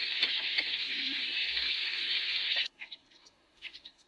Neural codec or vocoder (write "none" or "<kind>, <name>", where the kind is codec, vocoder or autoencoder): codec, SNAC